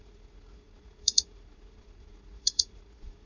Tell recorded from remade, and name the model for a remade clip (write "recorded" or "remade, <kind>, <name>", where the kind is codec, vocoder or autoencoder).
remade, vocoder, Vocos